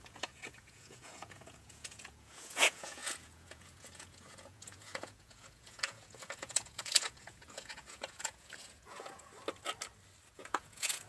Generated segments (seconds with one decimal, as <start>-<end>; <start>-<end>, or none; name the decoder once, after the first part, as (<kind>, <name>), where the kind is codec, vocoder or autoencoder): 0.0-9.3 (vocoder, Vocos); 10.3-11.1